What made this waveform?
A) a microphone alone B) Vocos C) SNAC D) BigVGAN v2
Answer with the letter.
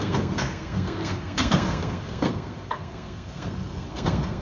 C